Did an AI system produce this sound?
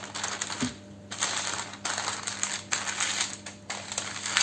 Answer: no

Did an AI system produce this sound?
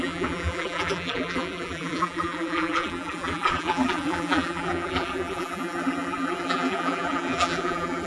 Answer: yes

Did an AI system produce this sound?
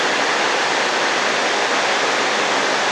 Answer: no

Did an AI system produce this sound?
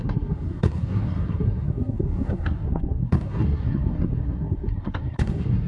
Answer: yes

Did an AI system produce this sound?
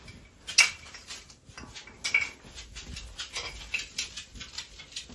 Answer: no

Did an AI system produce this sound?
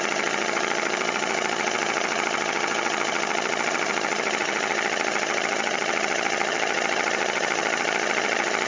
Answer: yes